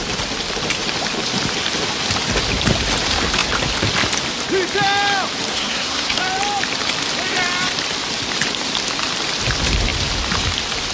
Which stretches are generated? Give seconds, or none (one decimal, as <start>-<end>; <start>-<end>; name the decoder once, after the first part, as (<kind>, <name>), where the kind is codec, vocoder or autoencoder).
5.5-6.2 (codec, SNAC)

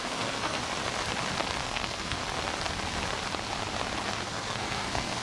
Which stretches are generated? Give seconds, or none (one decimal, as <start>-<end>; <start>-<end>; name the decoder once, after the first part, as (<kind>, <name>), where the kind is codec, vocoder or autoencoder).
0.0-0.6 (codec, SNAC); 1.6-2.2; 4.2-5.2

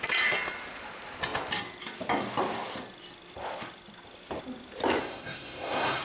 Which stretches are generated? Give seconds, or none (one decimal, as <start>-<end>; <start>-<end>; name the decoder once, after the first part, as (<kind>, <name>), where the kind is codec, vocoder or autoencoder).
5.0-6.0 (codec, SNAC)

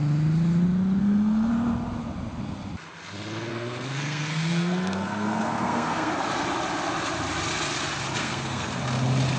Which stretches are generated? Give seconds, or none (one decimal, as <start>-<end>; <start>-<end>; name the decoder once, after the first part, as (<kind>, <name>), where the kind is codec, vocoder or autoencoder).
1.0-1.5 (codec, SNAC); 3.5-6.1; 8.2-8.7

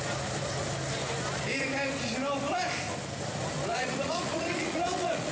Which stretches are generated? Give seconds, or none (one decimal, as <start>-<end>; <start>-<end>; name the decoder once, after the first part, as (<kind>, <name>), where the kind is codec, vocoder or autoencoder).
3.7-5.3 (vocoder, Vocos)